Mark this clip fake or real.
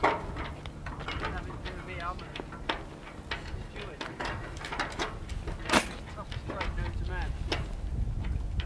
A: real